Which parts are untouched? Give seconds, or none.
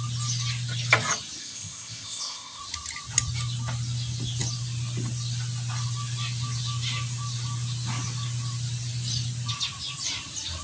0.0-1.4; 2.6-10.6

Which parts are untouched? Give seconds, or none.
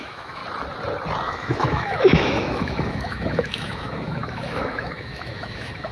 0.4-1.3